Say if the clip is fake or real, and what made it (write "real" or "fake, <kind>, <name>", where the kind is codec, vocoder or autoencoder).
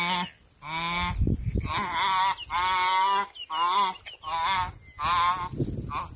real